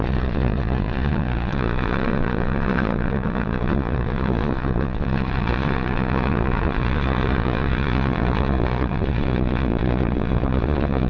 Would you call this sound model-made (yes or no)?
yes